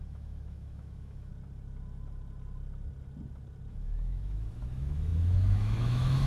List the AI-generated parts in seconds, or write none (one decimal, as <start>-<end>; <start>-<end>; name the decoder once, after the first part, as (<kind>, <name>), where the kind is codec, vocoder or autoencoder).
0.0-1.3 (autoencoder, DAC-VAE); 3.7-6.3